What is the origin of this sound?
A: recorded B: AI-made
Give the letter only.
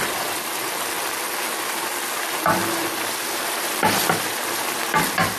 B